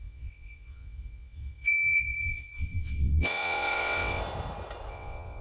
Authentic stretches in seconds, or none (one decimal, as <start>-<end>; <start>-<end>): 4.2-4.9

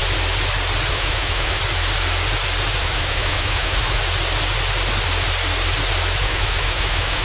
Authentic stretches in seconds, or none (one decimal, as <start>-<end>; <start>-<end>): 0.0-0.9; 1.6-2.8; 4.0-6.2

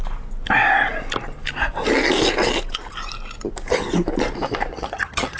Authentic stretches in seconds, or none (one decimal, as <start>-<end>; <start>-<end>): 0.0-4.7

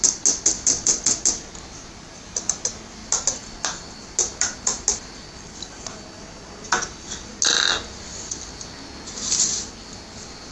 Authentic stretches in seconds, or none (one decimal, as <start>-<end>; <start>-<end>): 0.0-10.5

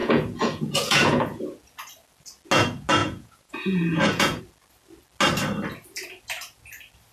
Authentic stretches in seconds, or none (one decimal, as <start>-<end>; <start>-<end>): 1.4-3.0; 4.4-7.1

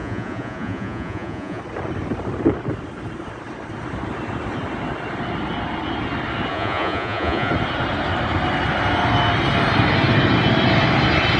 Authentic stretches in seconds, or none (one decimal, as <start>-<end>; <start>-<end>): 1.6-6.5; 7.5-11.4

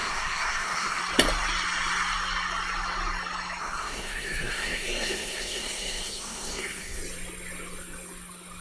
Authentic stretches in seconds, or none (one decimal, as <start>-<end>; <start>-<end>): 1.0-3.6; 7.0-8.6

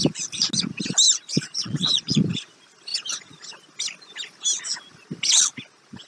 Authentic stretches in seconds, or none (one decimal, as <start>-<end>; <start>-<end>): 0.0-1.3; 2.2-6.1